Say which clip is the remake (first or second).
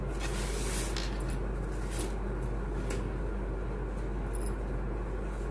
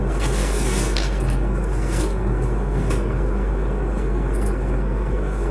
second